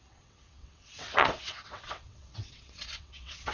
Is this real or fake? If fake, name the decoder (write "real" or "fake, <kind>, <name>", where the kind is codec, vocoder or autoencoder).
fake, vocoder, WaveNeXt